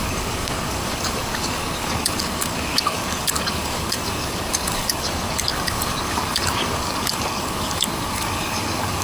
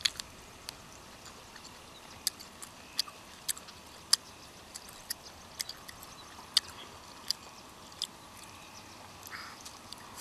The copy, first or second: first